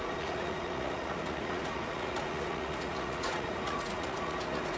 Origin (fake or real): fake